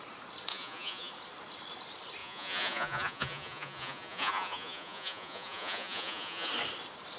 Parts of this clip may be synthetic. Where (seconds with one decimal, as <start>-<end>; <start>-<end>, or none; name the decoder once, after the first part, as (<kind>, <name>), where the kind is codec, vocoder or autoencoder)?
0.5-1.1 (vocoder, Vocos); 2.2-6.5